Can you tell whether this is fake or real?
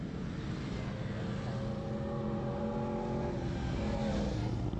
real